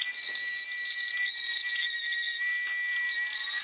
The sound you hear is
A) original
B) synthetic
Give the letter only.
A